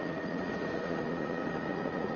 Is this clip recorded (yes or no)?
no